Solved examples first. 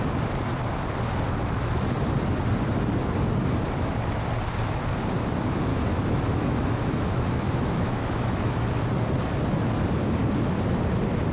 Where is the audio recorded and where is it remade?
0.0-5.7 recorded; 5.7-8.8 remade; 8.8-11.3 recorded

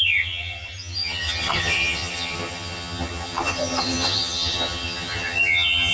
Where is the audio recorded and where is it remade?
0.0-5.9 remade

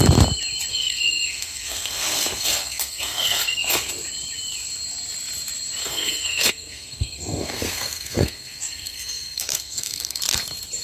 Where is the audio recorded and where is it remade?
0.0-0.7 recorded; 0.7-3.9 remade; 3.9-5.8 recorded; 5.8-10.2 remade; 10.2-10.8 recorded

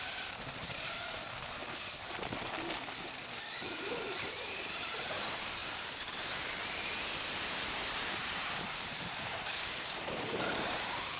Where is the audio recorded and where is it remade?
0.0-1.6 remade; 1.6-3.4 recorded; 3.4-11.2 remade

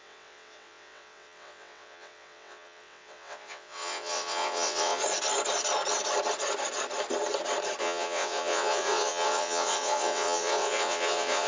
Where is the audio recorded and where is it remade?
0.0-5.0 remade; 5.0-7.8 recorded; 7.8-11.5 remade

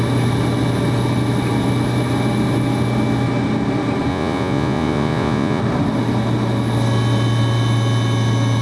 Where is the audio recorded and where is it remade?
0.0-4.1 recorded; 4.1-5.6 remade; 5.6-8.6 recorded

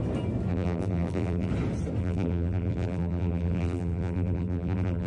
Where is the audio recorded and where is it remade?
0.0-0.5 recorded; 0.5-1.5 remade; 1.5-2.0 recorded; 2.0-5.1 remade